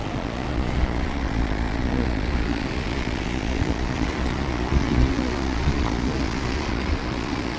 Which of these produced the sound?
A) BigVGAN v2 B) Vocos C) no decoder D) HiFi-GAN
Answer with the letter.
B